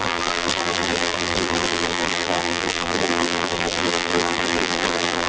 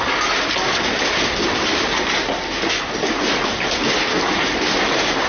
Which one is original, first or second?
second